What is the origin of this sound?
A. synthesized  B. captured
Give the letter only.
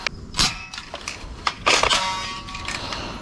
B